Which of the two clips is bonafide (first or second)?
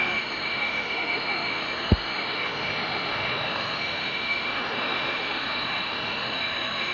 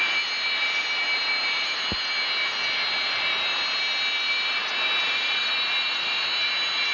second